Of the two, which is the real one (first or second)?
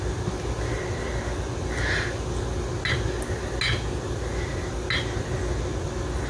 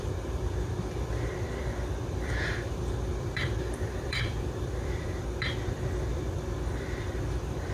first